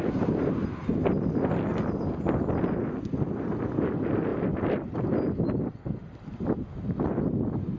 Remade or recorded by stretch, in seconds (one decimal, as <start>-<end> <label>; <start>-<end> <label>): 0.0-7.8 recorded